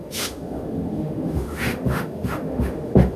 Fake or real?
fake